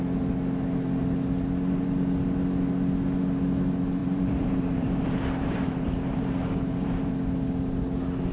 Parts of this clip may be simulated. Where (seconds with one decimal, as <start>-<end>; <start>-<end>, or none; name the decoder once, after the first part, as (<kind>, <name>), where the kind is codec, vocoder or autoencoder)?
4.0-7.1 (vocoder, BigVGAN v2)